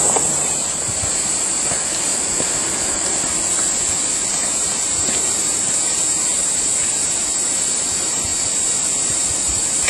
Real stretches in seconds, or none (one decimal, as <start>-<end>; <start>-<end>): 2.1-4.3; 8.3-9.0

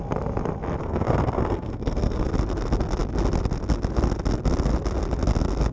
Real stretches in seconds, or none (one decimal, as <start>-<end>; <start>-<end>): 0.0-0.8; 2.3-5.7

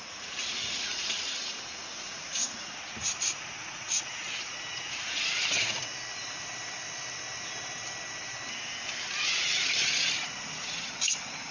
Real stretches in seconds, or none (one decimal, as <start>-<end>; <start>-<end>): 5.8-9.4

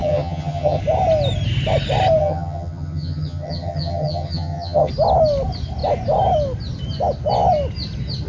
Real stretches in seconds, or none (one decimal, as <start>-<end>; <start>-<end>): 0.8-2.2; 4.9-8.3